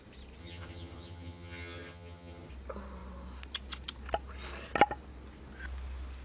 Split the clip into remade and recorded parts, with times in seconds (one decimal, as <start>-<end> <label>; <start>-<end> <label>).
0.0-0.4 recorded; 0.4-2.5 remade; 2.5-6.2 recorded